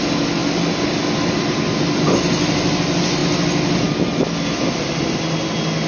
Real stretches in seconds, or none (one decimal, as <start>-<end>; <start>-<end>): 0.0-5.9